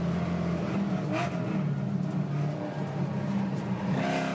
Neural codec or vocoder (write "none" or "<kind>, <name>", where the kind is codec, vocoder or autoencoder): none